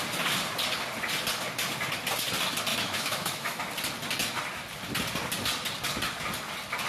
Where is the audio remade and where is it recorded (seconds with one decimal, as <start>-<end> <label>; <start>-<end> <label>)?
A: 0.0-2.7 recorded; 2.7-3.6 remade; 3.6-6.9 recorded